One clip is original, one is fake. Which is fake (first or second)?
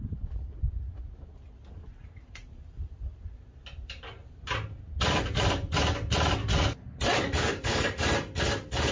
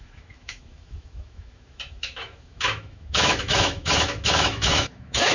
second